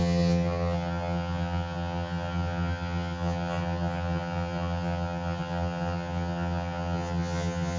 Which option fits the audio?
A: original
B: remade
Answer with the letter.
B